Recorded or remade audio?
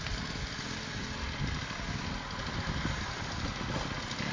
recorded